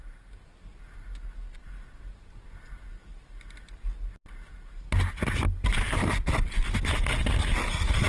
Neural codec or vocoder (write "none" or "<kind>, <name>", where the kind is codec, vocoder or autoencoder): none